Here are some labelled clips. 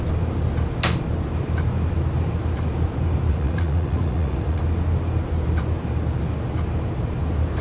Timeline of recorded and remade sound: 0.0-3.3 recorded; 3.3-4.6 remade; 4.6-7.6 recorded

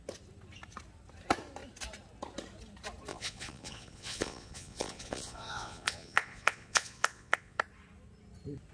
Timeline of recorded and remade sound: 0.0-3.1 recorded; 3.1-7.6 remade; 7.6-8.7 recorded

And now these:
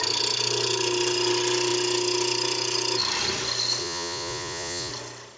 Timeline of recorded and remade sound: 0.0-3.8 recorded; 3.8-4.9 remade; 4.9-5.4 recorded